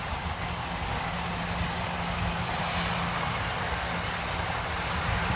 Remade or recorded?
recorded